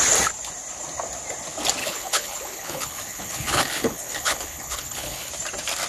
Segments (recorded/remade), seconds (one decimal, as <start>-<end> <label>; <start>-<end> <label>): 0.0-1.8 recorded; 1.8-5.3 remade; 5.3-5.9 recorded